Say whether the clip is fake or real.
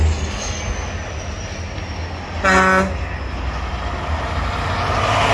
real